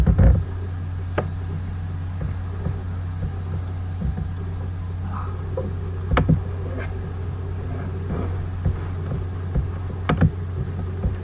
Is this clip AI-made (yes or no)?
no